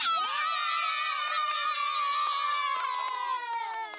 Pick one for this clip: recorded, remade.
recorded